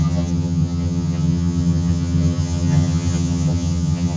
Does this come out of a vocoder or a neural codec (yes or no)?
yes